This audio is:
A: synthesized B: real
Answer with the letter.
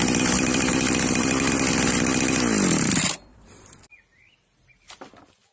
A